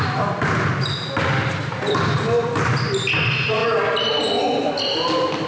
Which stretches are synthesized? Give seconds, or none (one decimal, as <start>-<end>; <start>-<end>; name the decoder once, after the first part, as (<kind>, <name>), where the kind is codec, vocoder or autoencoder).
none